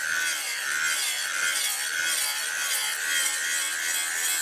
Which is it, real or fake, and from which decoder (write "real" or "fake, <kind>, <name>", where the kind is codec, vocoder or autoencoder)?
real